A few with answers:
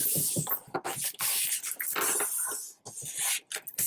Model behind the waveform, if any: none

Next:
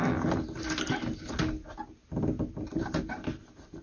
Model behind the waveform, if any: none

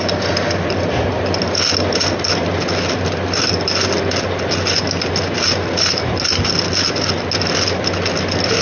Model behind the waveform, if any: none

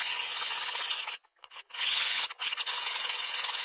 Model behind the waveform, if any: vocoder, Vocos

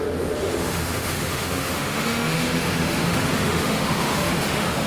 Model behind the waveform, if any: autoencoder, DAC-VAE